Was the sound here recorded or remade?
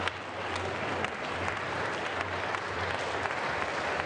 remade